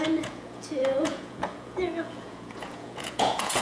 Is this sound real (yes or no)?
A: no